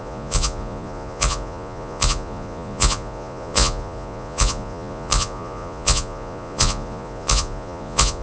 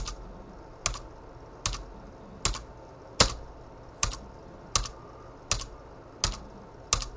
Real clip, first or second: second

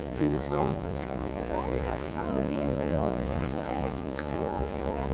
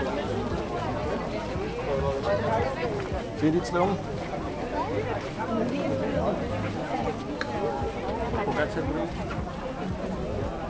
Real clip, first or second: second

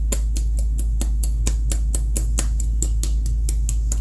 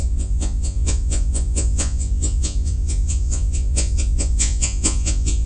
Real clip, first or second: first